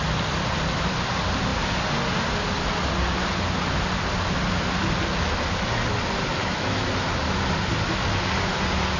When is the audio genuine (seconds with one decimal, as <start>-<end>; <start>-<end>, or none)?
0.0-6.4; 6.9-9.0